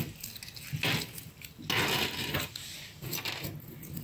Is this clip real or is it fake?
real